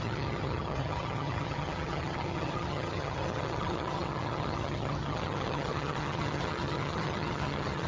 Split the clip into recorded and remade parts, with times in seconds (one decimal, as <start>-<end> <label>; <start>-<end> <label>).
0.0-7.9 remade

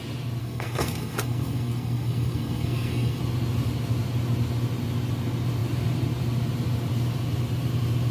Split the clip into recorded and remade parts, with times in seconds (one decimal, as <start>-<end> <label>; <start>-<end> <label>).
0.0-0.4 recorded; 0.4-3.2 remade; 3.2-8.1 recorded

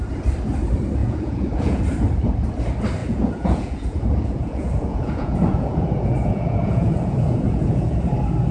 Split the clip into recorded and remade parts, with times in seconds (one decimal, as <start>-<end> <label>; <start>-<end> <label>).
0.0-1.0 recorded; 1.0-1.8 remade; 1.8-3.0 recorded; 3.0-8.0 remade; 8.0-8.5 recorded